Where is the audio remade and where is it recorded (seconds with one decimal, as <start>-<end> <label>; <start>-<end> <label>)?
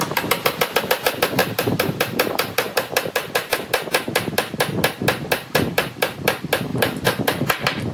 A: 0.0-1.4 recorded; 1.4-3.5 remade; 3.5-6.7 recorded; 6.7-7.2 remade; 7.2-7.9 recorded